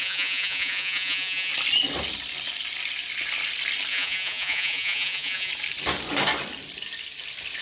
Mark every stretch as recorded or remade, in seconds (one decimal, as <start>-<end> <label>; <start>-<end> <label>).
0.0-1.5 remade; 1.5-3.9 recorded; 3.9-5.5 remade; 5.5-7.6 recorded